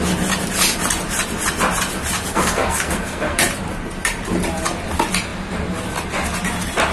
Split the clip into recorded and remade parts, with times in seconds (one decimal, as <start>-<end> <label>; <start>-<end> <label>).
0.0-2.3 recorded; 2.3-3.4 remade; 3.4-6.9 recorded